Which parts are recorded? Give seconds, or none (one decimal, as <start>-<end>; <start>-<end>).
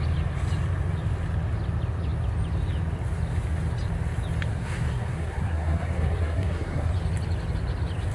0.0-4.5; 6.9-8.1